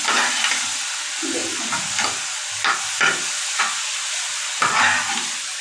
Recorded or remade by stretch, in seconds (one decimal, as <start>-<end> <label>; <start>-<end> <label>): 0.0-5.6 recorded